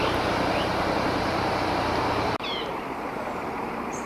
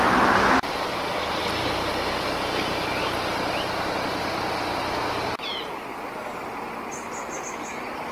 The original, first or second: second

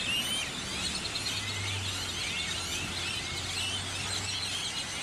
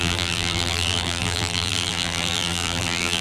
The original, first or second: first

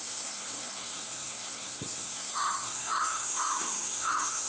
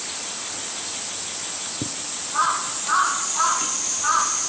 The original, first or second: second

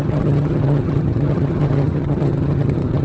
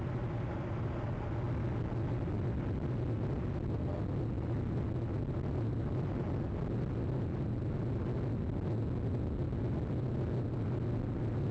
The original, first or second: second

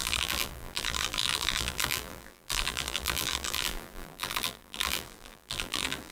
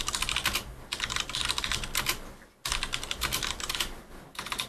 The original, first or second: second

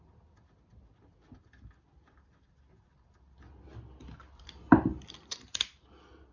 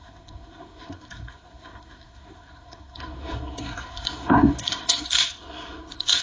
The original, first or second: first